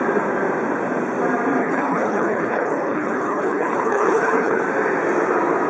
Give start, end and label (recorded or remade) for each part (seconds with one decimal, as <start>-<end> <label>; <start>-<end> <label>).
0.0-1.6 recorded; 1.6-4.6 remade; 4.6-5.7 recorded